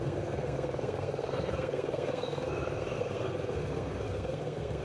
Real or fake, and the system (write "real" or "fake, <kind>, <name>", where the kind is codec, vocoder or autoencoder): fake, codec, SNAC